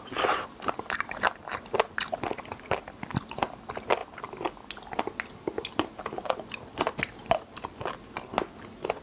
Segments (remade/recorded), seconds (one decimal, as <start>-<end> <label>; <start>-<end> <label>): 0.0-9.0 recorded